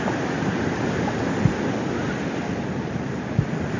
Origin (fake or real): real